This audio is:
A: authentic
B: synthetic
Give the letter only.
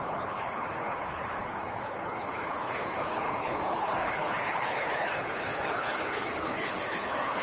B